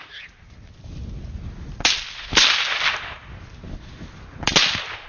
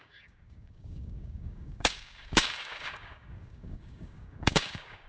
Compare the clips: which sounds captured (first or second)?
first